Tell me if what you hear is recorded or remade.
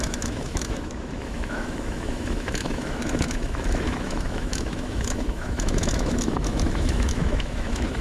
remade